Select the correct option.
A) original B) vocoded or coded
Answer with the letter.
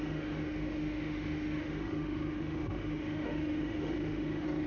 B